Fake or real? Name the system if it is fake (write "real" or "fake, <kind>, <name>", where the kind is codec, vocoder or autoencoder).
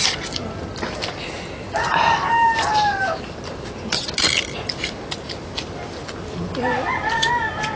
real